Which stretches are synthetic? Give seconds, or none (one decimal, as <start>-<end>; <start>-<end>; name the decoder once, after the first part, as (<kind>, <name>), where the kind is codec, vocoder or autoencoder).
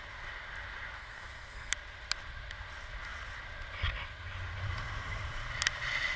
1.0-1.7 (codec, SNAC)